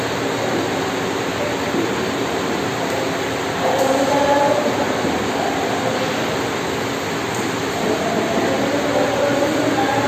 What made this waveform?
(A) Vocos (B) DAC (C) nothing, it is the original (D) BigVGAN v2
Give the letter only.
D